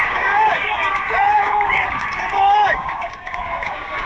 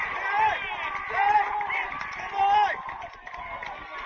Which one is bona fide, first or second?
second